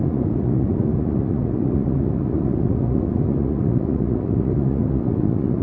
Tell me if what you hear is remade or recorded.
remade